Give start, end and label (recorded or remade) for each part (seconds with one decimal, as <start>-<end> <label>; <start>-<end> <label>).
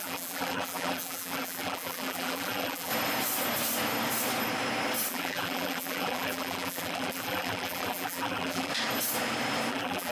0.0-2.9 remade; 2.9-5.1 recorded; 5.1-8.7 remade; 8.7-9.7 recorded; 9.7-10.1 remade